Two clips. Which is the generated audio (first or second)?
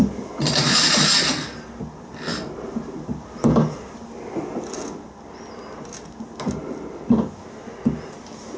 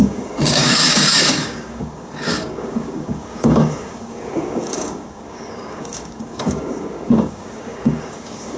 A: second